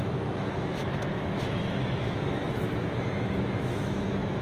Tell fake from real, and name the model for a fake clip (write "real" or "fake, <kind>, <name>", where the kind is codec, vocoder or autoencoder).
fake, autoencoder, DAC-VAE